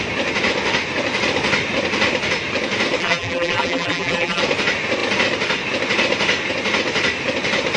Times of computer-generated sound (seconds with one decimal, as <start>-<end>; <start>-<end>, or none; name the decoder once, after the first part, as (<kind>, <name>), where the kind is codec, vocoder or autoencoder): 3.0-4.4 (vocoder, BigVGAN v2)

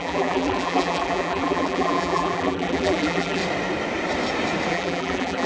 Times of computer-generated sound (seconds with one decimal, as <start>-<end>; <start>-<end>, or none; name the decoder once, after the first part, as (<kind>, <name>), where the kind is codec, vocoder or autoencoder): 0.0-3.4 (vocoder, BigVGAN v2); 4.7-5.5

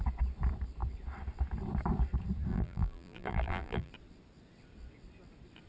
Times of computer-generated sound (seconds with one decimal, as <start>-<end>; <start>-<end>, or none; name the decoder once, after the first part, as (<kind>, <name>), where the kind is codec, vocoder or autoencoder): 2.5-3.9 (vocoder, BigVGAN v2)

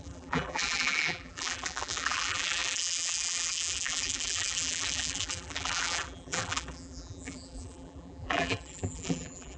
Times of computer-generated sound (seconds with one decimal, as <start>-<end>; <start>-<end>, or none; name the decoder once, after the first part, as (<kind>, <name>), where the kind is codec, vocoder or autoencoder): 0.0-9.6 (vocoder, BigVGAN v2)

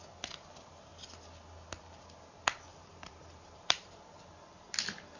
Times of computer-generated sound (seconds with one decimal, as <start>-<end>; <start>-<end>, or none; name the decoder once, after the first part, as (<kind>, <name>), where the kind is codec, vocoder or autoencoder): 2.7-4.2 (vocoder, BigVGAN v2)

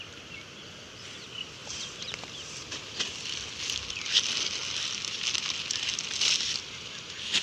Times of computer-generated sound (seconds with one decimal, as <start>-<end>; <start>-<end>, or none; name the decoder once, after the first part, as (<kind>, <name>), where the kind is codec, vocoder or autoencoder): 1.6-3.0 (vocoder, BigVGAN v2)